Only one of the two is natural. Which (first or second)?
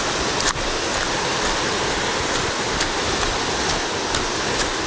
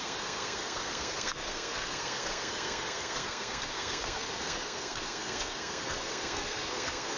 first